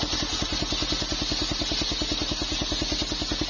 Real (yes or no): yes